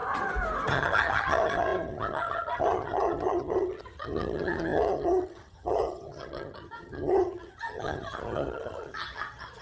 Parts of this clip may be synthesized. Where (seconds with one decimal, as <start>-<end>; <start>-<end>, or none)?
0.7-9.6